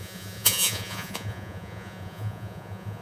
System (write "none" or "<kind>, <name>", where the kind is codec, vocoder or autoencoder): vocoder, Vocos